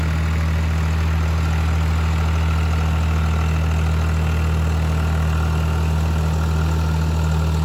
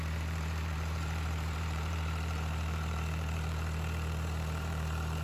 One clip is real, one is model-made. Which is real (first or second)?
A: first